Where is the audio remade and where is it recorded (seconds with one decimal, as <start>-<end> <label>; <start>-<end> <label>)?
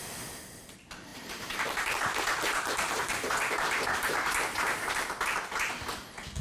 0.0-1.1 recorded; 1.1-4.9 remade; 4.9-6.4 recorded